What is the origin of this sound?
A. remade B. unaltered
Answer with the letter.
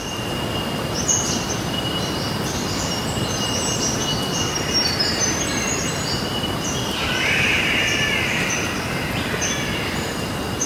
B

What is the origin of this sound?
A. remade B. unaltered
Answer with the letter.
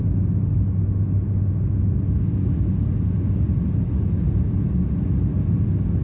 B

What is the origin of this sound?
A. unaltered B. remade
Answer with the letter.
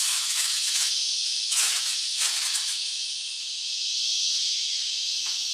B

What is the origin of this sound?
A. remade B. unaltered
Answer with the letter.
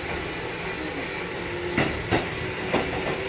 B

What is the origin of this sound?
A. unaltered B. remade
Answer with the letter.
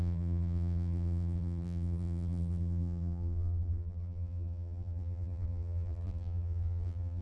B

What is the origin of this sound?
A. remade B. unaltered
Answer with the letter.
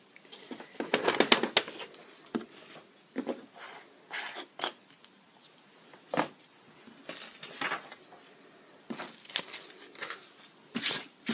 B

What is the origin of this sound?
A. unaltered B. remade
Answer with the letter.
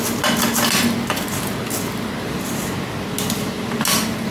A